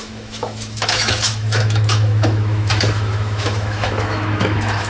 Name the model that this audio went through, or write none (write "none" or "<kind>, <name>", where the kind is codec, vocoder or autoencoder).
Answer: autoencoder, DAC-VAE